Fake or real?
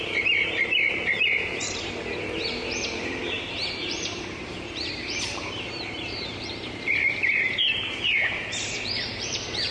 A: fake